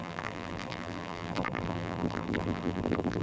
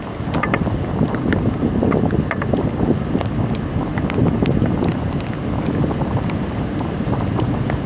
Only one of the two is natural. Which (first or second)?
second